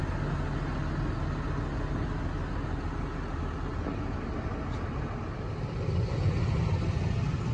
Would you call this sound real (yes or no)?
yes